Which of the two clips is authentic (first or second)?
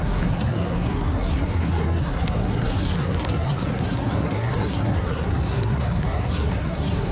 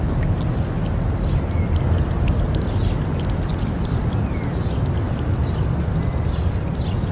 second